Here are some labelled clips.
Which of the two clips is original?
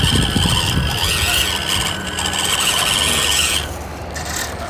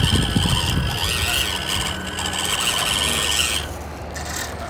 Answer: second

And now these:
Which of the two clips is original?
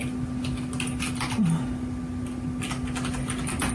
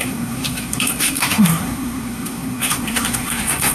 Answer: first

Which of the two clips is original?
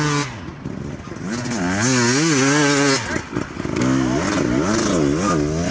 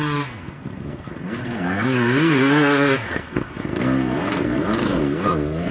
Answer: first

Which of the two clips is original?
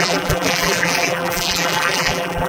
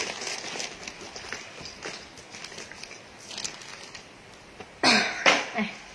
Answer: second